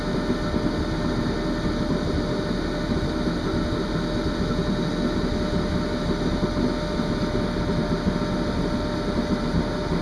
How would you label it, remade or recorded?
recorded